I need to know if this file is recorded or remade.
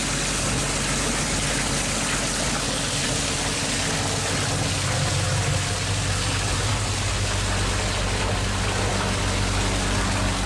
recorded